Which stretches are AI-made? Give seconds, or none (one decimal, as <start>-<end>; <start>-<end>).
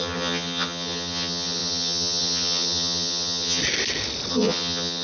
0.0-3.6; 4.3-5.0